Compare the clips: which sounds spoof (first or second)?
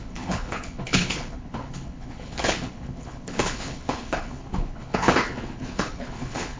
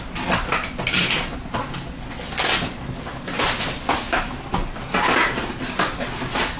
first